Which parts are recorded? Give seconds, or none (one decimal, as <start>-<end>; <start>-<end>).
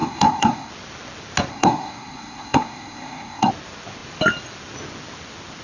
0.7-1.5; 3.5-5.6